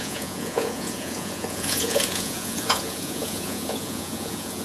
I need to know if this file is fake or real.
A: fake